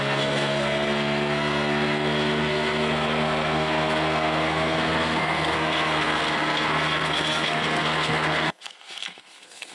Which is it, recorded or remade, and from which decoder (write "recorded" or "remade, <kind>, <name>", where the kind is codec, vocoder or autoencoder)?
remade, codec, SNAC